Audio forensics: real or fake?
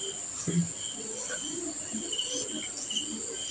real